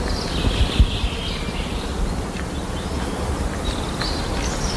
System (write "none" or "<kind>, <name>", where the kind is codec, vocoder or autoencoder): none